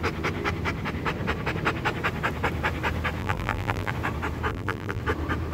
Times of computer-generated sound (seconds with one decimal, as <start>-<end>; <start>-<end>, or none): 3.2-3.9; 4.5-5.0